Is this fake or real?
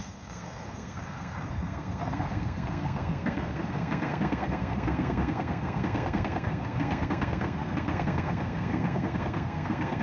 fake